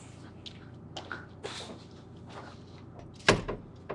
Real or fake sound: real